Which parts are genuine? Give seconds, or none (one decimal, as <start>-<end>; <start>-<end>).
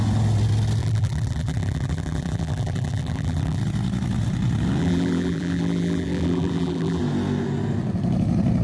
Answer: 0.0-0.8; 3.6-4.8; 7.0-8.6